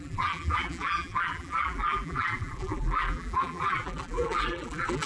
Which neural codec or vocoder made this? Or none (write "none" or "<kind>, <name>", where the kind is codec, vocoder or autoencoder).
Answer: vocoder, BigVGAN v2